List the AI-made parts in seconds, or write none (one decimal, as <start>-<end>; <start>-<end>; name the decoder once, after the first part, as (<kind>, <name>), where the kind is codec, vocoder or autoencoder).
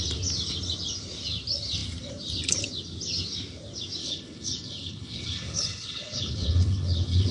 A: 4.0-7.3 (codec, HILCodec)